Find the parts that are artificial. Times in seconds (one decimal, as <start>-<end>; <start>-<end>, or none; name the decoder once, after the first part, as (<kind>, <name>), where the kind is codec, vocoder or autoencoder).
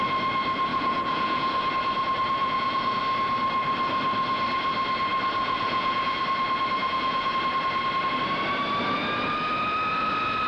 0.7-1.7 (vocoder, Vocos); 2.4-3.0; 5.4-6.2; 6.8-7.3